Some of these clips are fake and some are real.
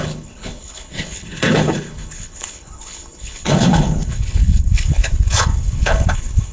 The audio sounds fake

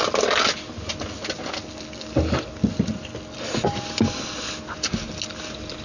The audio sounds real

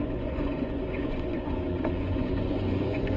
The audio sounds fake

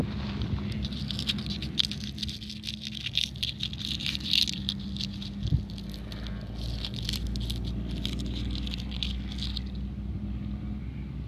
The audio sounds real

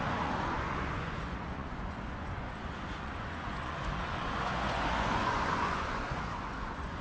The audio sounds fake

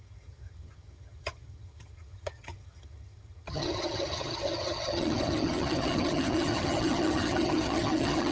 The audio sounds fake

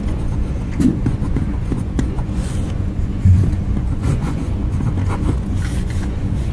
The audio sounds fake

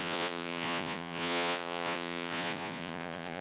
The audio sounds fake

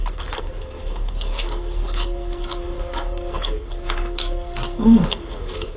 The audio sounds fake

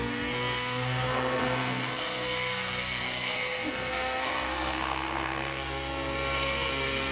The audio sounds fake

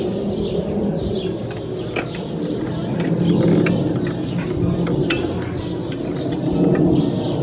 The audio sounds real